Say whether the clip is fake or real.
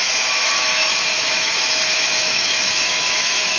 fake